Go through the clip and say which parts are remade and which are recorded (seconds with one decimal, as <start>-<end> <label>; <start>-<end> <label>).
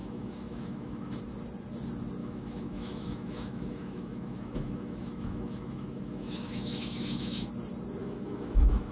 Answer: 0.0-1.2 remade; 1.2-2.2 recorded; 2.2-7.5 remade; 7.5-8.0 recorded; 8.0-8.9 remade